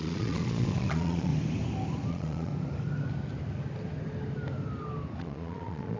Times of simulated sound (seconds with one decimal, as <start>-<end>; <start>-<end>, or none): 0.0-1.3; 2.1-2.5; 5.2-6.0